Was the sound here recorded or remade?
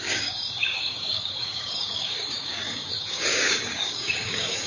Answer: remade